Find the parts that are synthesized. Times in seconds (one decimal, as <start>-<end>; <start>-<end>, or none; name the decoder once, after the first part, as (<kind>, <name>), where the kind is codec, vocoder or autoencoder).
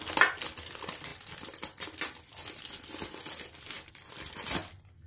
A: none